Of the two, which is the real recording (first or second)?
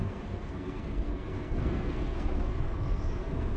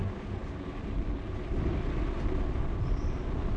second